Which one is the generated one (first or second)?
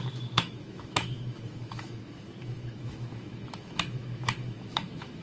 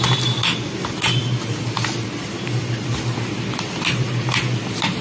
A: first